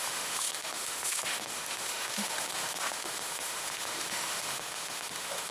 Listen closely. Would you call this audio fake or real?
fake